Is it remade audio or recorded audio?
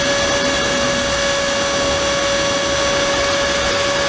recorded